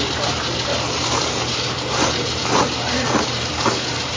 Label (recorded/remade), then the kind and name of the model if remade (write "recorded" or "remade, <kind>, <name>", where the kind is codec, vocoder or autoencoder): recorded